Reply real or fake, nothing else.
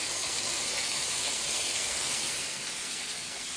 fake